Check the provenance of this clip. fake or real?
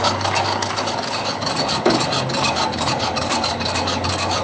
fake